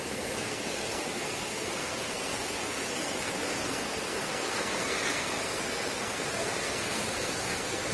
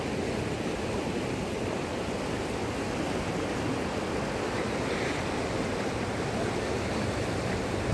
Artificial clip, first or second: first